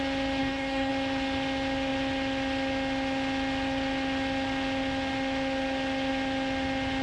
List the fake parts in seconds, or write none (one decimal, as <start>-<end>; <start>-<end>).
0.4-0.9